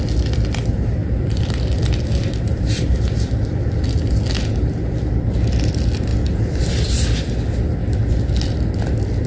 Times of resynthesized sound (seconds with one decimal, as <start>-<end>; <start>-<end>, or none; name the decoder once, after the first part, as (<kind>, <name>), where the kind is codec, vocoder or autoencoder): 1.0-4.3 (vocoder, BigVGAN v2); 6.1-6.7